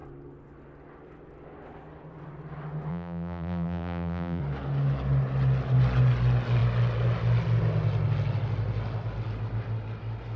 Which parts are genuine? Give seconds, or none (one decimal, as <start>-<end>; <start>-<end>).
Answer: 0.0-2.9; 4.4-10.4